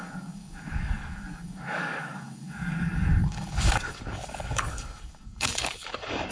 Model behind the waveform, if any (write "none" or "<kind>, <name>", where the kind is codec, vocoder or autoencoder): codec, DAC